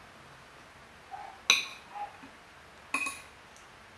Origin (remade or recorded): recorded